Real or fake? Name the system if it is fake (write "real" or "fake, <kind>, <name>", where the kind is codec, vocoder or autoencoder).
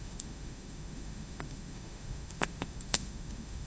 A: fake, autoencoder, DAC-VAE